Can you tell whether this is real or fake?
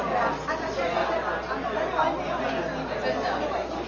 real